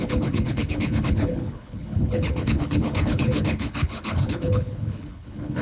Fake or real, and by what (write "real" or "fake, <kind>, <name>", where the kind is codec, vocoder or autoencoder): fake, codec, HILCodec